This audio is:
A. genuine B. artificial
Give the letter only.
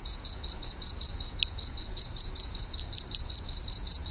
B